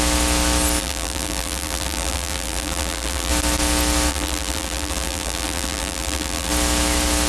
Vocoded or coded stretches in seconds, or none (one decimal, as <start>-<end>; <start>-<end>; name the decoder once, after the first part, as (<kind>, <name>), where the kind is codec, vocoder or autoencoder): 0.8-3.3 (vocoder, BigVGAN v2); 4.1-6.5